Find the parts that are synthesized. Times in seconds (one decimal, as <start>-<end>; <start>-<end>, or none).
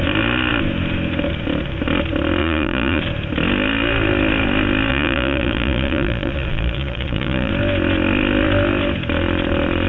2.4-3.0; 4.9-7.5